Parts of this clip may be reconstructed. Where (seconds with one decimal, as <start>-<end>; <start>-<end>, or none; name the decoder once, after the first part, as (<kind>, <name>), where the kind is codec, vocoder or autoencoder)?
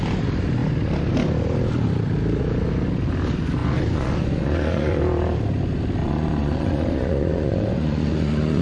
3.6-5.0 (vocoder, Vocos); 6.0-8.6